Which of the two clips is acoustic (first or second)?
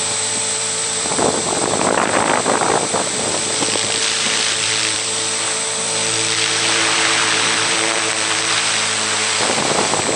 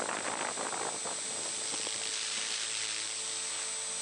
second